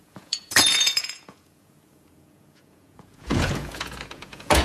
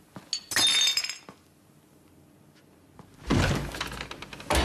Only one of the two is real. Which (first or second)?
second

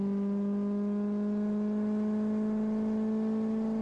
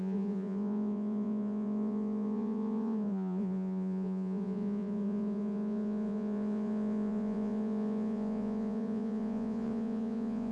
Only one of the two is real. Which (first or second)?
first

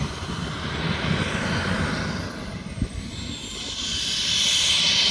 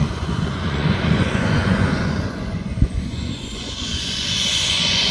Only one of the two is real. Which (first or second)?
first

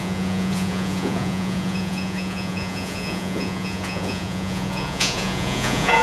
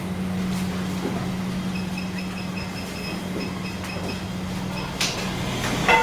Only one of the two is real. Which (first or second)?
second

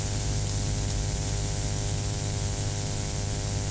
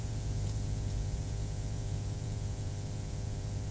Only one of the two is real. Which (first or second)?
first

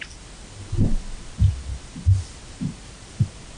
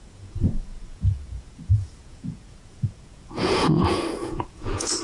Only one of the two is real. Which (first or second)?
first